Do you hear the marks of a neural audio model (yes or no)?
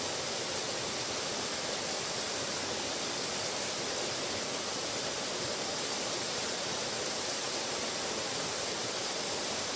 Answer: no